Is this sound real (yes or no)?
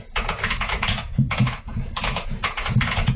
no